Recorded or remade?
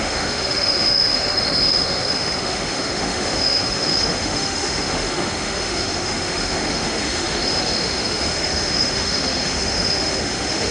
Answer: remade